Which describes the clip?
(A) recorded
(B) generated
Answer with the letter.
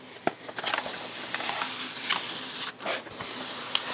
A